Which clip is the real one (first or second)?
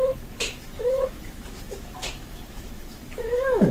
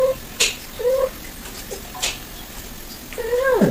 second